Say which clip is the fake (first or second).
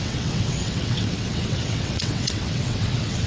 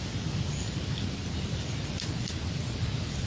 first